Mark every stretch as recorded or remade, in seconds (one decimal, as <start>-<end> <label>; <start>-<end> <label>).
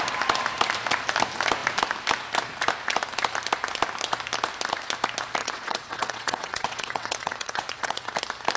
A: 0.0-5.4 recorded; 5.4-8.1 remade; 8.1-8.6 recorded